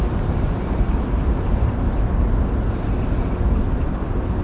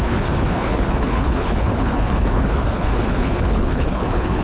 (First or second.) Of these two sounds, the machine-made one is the second